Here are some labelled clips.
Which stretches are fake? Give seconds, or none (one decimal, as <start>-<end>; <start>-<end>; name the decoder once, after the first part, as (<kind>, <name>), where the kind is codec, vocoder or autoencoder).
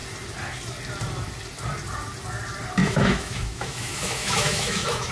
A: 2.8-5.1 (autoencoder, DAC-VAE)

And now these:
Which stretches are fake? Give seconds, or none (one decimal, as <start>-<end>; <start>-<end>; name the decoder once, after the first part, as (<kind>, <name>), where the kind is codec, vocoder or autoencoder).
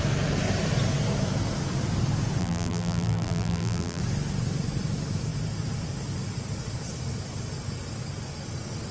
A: 2.4-4.0 (vocoder, BigVGAN v2)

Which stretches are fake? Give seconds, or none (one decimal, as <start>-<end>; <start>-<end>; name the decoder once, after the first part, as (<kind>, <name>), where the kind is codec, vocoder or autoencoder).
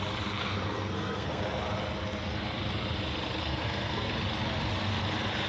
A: 0.4-1.4 (codec, SNAC); 3.4-4.1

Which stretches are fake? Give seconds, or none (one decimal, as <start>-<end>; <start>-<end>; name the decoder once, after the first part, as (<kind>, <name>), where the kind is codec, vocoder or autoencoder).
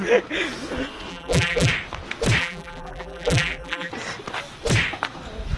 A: 1.1-1.7 (vocoder, BigVGAN v2); 2.4-3.9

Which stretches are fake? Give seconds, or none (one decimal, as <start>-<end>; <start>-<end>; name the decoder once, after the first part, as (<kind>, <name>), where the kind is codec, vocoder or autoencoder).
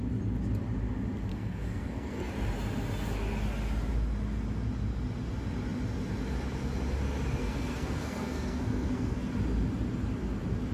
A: 1.3-2.3 (codec, SNAC); 7.4-9.3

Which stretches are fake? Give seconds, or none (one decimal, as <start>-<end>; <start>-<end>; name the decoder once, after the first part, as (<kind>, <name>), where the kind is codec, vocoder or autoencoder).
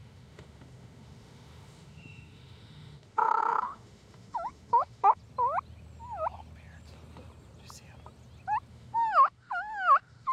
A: 0.0-5.2 (autoencoder, DAC-VAE); 8.7-10.3